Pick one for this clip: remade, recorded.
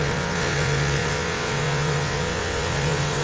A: remade